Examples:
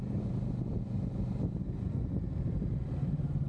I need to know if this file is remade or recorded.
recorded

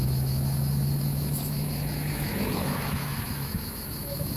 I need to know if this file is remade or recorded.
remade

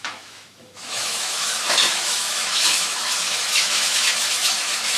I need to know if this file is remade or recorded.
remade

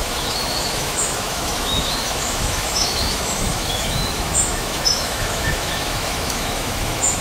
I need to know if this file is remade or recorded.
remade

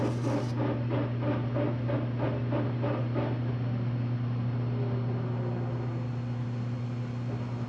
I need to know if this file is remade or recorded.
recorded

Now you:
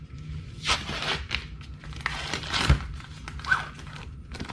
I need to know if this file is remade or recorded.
recorded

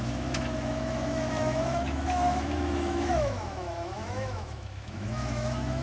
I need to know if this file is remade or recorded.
remade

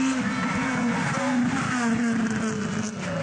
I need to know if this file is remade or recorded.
recorded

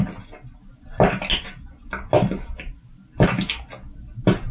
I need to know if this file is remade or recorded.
recorded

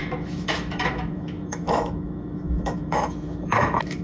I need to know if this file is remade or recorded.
remade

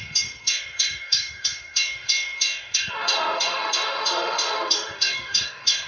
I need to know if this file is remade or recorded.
remade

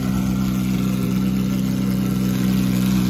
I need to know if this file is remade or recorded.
recorded